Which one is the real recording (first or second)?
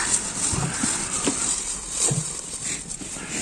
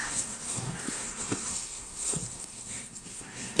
first